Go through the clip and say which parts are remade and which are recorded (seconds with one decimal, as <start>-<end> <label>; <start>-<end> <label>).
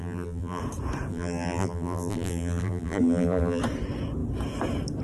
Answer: 0.0-0.6 remade; 0.6-1.1 recorded; 1.1-3.6 remade; 3.6-5.0 recorded